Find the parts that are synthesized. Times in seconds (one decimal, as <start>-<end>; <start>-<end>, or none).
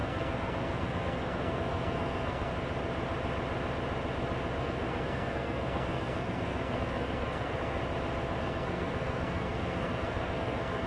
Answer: 0.0-2.5; 4.6-7.8; 8.4-10.9